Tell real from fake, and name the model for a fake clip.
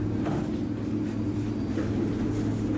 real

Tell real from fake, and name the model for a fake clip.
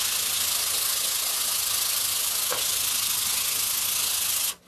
real